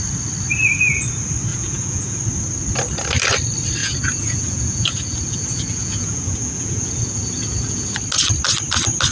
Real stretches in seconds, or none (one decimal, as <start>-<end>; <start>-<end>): 0.0-1.5; 2.2-3.8; 8.0-9.1